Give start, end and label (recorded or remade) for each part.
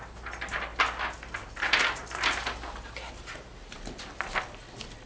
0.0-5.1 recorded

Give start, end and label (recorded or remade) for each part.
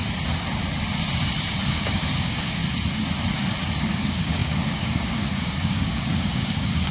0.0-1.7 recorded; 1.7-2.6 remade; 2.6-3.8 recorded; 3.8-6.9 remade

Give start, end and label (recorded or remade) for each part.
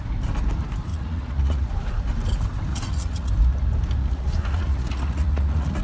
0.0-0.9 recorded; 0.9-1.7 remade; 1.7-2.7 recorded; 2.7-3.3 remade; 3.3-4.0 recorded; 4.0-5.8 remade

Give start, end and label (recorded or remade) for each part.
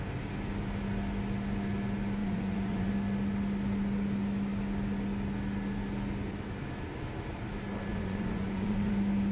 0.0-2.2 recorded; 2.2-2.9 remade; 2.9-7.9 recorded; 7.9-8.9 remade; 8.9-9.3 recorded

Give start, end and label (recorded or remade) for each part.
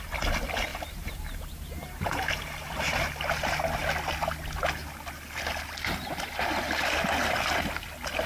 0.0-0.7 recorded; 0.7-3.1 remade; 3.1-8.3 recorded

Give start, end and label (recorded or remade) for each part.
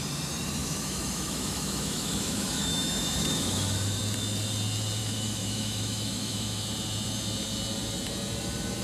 0.0-0.6 recorded; 0.6-4.0 remade; 4.0-5.0 recorded; 5.0-6.6 remade; 6.6-8.8 recorded